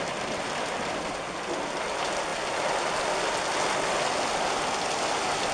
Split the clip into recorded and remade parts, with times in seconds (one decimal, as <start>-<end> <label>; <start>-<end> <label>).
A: 0.0-5.5 recorded